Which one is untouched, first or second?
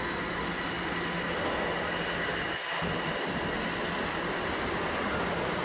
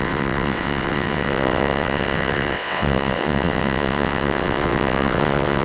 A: first